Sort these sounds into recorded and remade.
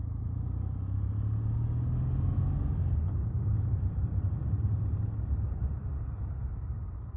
recorded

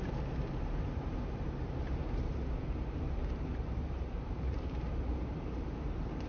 remade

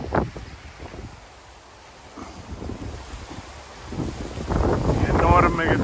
recorded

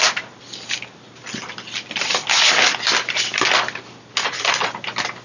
recorded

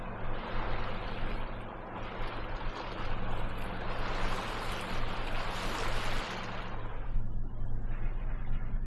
recorded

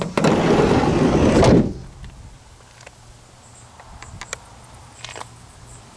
recorded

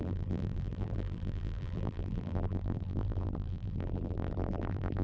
remade